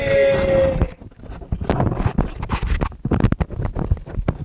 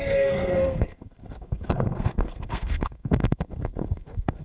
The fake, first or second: second